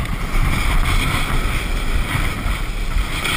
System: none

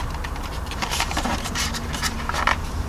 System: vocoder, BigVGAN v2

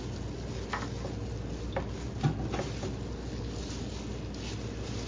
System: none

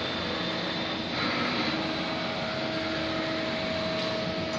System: none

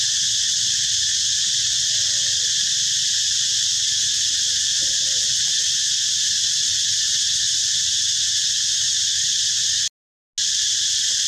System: none